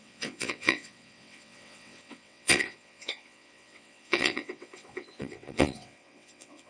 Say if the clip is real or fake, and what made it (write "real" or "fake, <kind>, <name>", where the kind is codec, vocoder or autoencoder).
fake, vocoder, WaveNeXt